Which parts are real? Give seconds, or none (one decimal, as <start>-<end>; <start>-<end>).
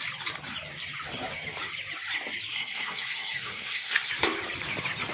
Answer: 0.0-2.5; 4.1-5.1